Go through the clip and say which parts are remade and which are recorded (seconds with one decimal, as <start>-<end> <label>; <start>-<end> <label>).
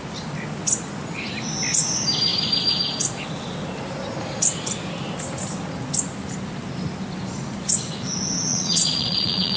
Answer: 0.0-8.5 recorded; 8.5-9.6 remade